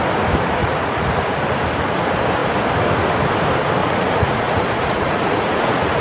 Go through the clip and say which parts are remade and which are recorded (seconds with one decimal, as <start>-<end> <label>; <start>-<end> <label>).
0.0-0.6 recorded; 0.6-1.4 remade; 1.4-3.8 recorded; 3.8-6.0 remade